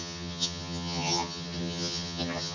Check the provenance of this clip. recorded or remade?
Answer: remade